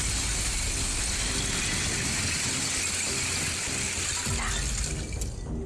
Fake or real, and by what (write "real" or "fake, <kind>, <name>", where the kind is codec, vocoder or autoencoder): real